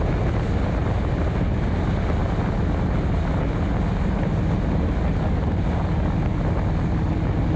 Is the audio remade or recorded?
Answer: recorded